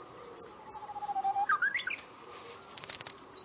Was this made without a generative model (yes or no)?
yes